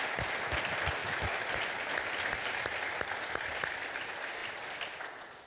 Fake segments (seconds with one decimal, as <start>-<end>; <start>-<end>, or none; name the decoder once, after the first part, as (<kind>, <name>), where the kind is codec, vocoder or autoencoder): 1.0-3.5 (vocoder, BigVGAN v2)